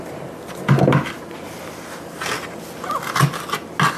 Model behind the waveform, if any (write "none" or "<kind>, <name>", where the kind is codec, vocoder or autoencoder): none